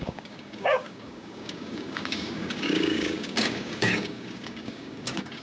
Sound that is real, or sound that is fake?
fake